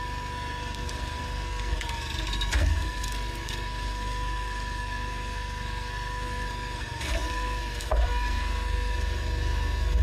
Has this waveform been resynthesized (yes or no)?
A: yes